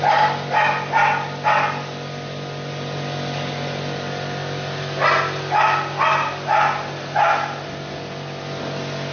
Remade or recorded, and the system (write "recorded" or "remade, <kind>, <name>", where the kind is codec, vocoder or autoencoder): recorded